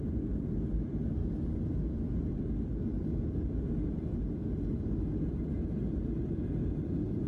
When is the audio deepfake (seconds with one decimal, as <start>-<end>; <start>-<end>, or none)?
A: none